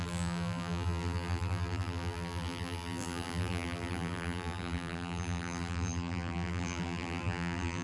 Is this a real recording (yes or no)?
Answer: no